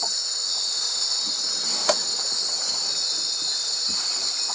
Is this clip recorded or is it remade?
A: recorded